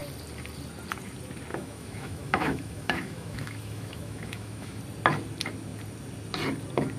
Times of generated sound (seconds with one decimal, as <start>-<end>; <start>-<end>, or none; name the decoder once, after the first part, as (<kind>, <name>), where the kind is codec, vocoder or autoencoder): 1.5-4.8 (autoencoder, DAC-VAE)